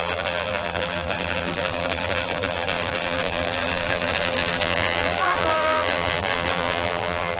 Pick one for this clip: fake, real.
fake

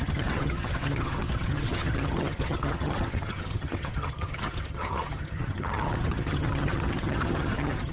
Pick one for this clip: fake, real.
fake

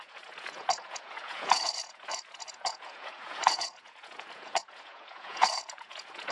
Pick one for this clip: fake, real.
fake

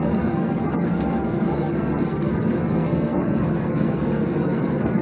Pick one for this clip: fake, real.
fake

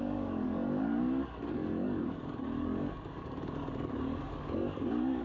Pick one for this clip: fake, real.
fake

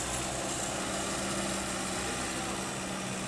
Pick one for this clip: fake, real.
real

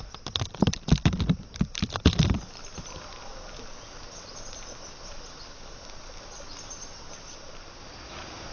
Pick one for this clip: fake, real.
real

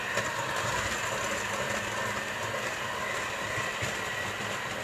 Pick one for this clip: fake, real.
real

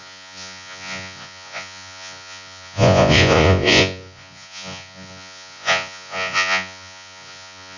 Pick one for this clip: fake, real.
fake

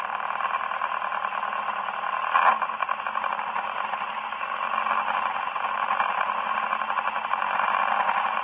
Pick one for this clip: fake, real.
real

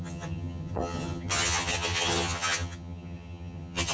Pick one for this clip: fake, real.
fake